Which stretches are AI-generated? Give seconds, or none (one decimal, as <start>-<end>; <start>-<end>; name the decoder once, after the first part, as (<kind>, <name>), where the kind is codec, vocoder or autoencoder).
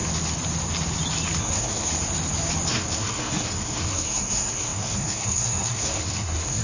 1.4-1.9 (codec, SNAC); 2.7-6.6